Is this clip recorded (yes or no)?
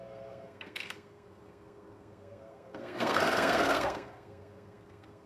no